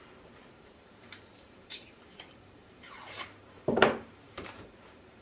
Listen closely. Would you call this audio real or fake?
fake